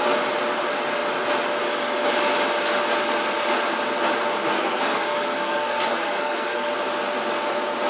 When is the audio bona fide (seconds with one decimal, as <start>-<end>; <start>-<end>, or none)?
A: 0.0-4.4; 6.7-7.9